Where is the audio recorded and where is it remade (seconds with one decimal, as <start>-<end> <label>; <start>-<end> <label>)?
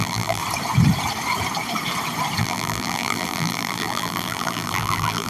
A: 0.0-0.4 remade; 0.4-2.4 recorded; 2.4-5.3 remade